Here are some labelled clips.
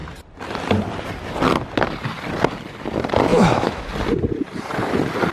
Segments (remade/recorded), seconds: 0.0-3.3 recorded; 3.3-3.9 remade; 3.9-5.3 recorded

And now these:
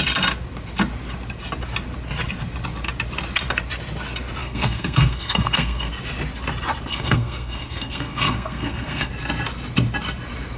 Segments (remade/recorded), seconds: 0.0-4.4 recorded; 4.4-5.9 remade; 5.9-6.9 recorded; 6.9-9.1 remade; 9.1-10.6 recorded

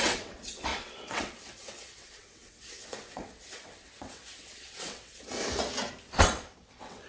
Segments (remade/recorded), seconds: 0.0-5.4 remade; 5.4-6.2 recorded; 6.2-7.1 remade

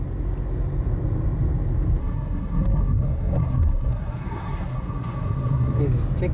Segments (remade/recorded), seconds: 0.0-2.0 recorded; 2.0-5.8 remade; 5.8-6.3 recorded